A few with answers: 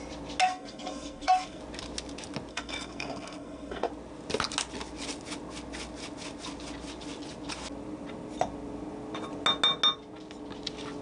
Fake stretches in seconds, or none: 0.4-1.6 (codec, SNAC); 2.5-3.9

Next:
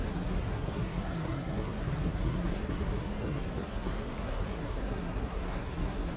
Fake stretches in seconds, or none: 0.0-6.2 (codec, SNAC)

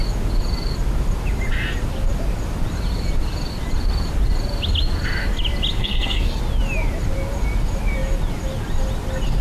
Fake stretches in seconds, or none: 5.8-6.4 (codec, SNAC)